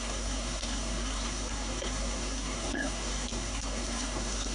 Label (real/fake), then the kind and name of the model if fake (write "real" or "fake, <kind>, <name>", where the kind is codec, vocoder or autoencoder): fake, codec, SNAC